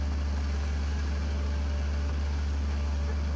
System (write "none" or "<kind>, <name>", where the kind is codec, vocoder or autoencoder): none